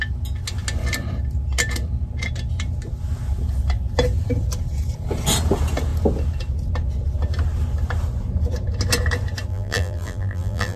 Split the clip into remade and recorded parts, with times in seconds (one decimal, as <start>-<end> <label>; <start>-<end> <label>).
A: 0.0-9.5 recorded; 9.5-10.8 remade